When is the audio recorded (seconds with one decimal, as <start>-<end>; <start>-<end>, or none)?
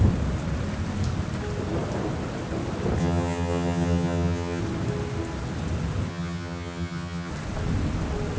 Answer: 0.0-3.0; 4.6-6.1; 7.3-8.4